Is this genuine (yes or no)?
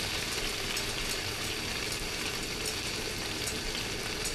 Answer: yes